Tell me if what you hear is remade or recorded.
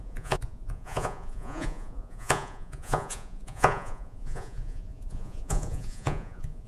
remade